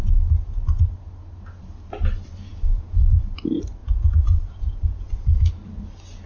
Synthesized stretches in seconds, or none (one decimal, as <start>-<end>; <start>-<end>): 2.5-3.2; 3.8-5.5